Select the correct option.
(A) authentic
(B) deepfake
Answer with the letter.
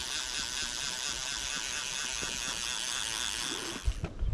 A